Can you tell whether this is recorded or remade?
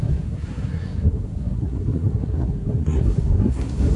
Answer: remade